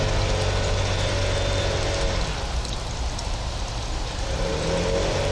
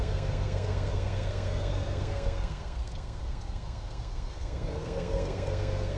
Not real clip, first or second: second